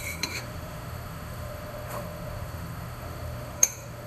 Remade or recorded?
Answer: remade